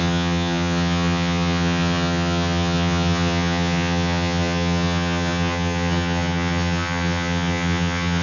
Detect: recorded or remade remade